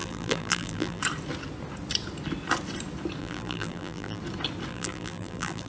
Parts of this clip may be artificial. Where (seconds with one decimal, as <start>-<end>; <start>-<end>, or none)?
0.0-1.0; 3.2-4.2; 4.7-5.7